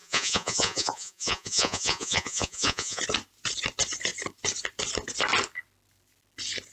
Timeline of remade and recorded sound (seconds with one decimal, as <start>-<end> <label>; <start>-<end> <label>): 0.0-3.0 remade; 3.0-6.7 recorded